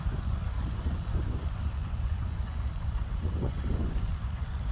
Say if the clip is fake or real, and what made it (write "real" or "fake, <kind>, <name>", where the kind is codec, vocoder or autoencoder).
fake, vocoder, Vocos